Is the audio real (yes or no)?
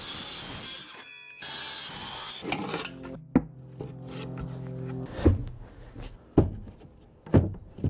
yes